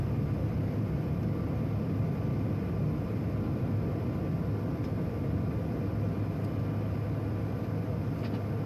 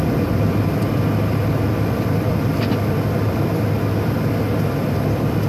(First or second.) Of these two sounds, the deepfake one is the second